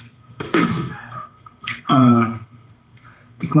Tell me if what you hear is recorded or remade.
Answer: remade